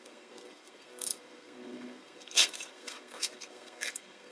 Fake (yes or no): yes